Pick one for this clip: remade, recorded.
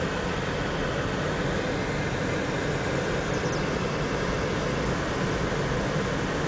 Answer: recorded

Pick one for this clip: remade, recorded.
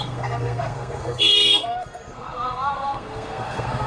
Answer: remade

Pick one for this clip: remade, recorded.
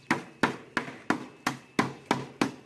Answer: recorded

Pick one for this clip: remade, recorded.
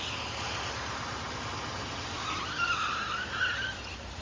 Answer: recorded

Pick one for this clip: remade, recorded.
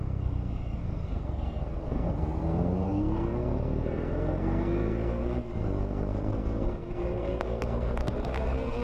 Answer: remade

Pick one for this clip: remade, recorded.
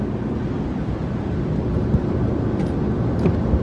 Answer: recorded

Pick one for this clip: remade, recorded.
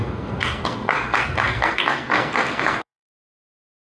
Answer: remade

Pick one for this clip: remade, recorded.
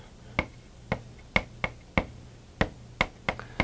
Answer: recorded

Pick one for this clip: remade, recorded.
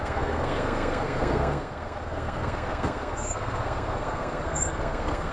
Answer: remade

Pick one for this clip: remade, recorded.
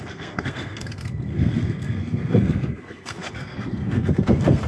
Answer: remade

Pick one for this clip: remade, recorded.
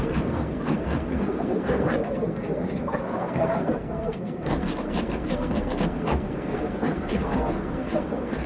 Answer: remade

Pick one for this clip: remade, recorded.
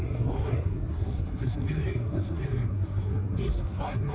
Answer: remade